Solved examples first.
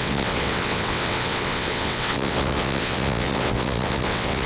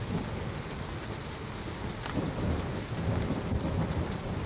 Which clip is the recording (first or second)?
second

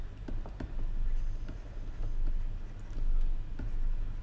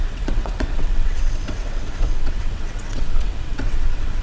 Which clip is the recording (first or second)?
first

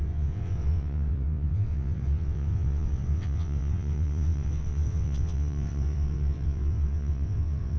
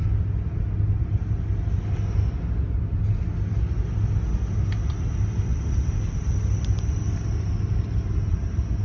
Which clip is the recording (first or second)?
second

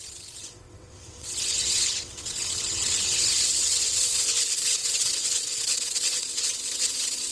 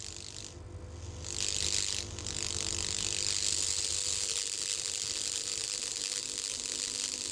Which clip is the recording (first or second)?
second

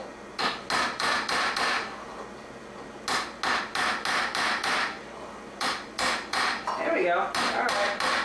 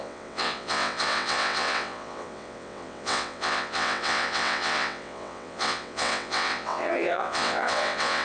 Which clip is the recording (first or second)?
first